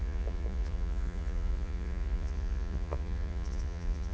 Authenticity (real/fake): fake